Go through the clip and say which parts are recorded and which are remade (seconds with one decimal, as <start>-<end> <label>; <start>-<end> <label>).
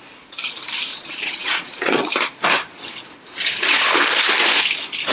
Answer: 0.0-0.9 recorded; 0.9-2.1 remade; 2.1-3.4 recorded; 3.4-4.0 remade; 4.0-5.1 recorded